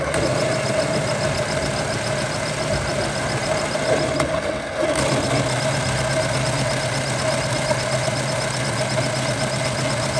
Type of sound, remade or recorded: recorded